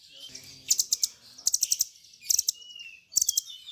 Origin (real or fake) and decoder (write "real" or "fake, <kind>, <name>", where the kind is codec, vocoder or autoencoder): real